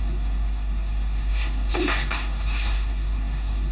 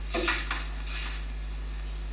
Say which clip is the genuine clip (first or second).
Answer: second